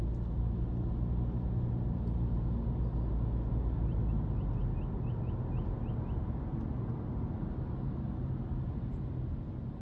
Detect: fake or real real